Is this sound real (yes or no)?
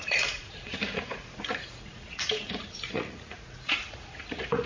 no